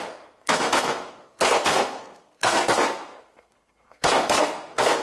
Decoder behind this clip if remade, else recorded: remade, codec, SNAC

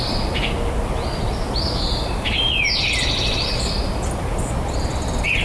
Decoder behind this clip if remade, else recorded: recorded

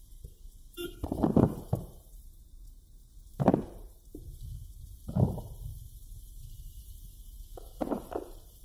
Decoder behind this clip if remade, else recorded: remade, vocoder, BigVGAN v2